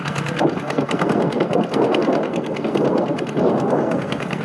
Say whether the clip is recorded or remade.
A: remade